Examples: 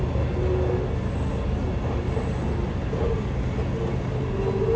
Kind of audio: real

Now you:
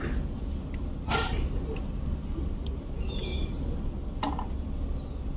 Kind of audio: real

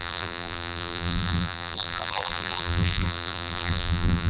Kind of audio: fake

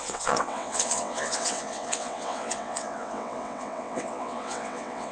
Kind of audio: fake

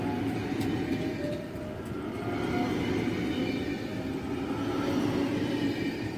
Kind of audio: real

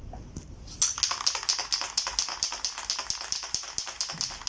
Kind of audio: real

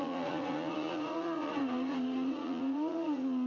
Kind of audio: fake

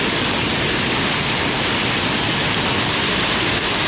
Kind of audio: real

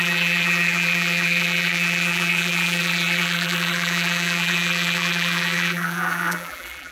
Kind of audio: fake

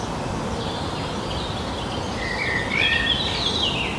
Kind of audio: real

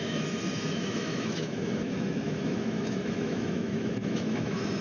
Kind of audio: fake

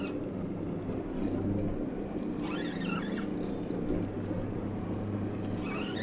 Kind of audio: real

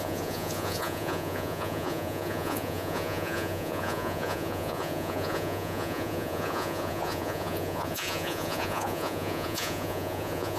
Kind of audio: fake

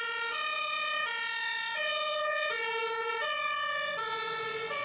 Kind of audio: fake